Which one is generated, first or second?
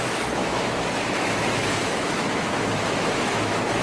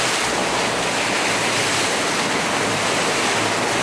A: first